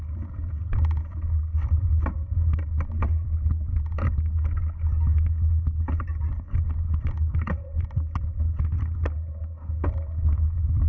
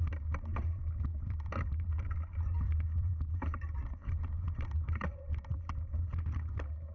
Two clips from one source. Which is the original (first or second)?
first